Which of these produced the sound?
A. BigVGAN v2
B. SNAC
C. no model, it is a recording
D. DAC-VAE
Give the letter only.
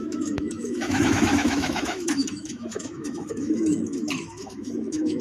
D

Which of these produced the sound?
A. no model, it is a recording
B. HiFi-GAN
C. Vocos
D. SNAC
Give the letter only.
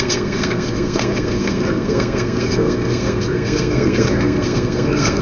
D